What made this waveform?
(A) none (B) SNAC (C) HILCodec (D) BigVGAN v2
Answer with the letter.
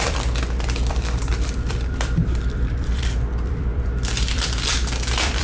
D